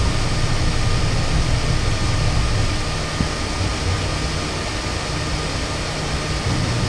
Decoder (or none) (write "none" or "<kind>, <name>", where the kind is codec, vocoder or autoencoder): none